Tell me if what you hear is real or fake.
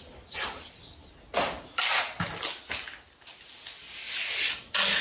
real